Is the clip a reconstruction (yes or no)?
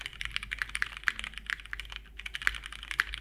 no